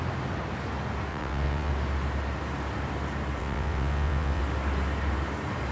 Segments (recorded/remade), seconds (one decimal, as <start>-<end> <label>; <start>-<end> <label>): 0.0-1.1 recorded; 1.1-1.7 remade; 1.7-3.4 recorded; 3.4-4.4 remade; 4.4-5.7 recorded